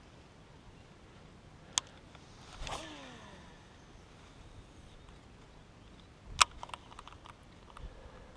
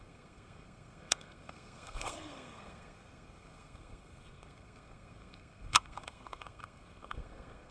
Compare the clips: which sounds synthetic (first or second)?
second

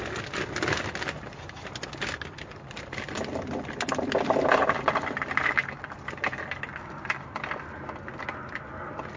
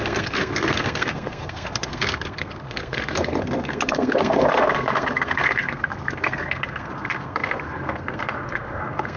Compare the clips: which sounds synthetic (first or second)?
second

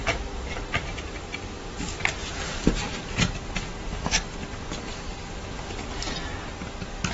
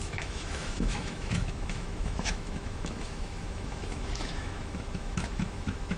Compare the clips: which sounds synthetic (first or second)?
second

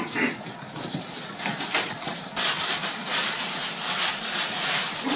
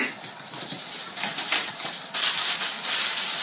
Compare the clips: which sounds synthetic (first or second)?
first